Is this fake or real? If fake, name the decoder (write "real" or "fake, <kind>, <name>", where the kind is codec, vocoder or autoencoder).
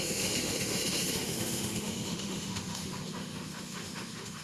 fake, autoencoder, DAC-VAE